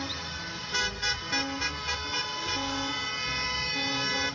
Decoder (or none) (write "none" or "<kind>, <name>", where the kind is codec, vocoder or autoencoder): none